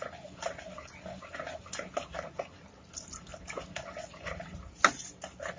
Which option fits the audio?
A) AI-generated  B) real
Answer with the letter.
B